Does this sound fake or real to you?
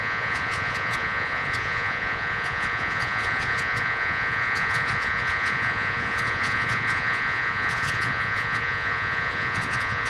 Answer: fake